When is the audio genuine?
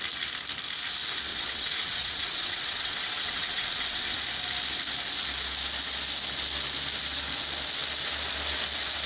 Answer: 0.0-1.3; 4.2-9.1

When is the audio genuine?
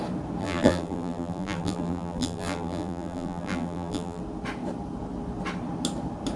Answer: 0.0-0.4; 4.2-6.4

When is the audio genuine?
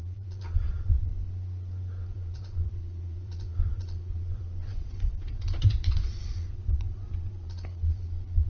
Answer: 1.1-2.0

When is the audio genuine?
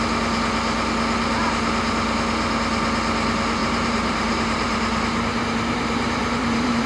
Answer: 0.0-3.6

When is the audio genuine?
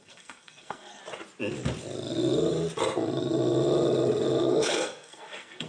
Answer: 1.0-4.4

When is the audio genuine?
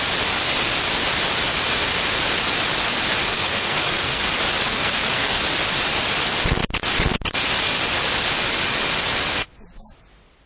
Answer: 0.0-3.3; 4.2-4.7; 5.4-10.5